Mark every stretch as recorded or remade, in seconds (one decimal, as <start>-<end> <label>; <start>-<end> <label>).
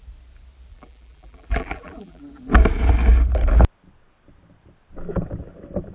0.0-0.7 recorded; 0.7-2.2 remade; 2.2-5.9 recorded